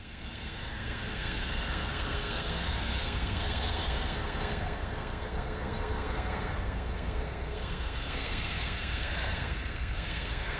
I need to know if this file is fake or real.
fake